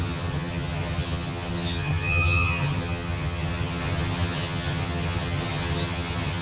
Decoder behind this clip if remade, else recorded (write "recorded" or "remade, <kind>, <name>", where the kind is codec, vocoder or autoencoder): remade, vocoder, HiFi-GAN